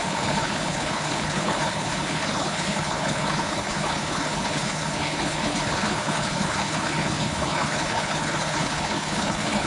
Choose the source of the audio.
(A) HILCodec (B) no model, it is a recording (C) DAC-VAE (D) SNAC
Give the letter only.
A